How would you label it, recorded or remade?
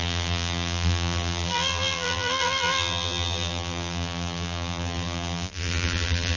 remade